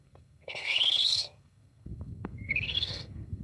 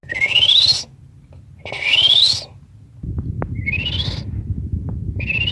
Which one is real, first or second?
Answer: second